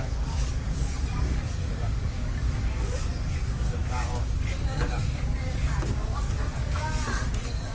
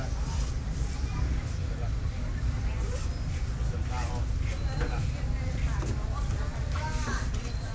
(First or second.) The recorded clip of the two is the second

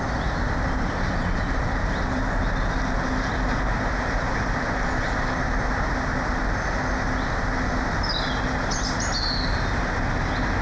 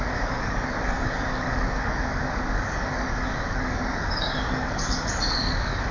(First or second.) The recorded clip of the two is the first